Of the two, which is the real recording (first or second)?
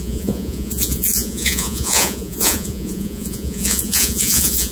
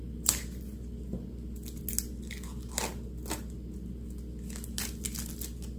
second